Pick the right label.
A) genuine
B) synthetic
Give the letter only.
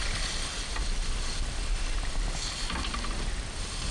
A